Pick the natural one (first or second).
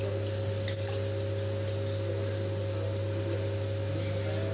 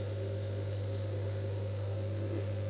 first